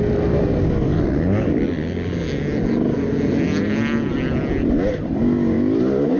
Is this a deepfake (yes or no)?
no